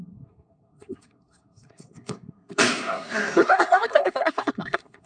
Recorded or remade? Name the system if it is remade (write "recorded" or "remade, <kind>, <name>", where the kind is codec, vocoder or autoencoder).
remade, codec, SNAC